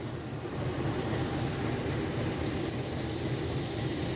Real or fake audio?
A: real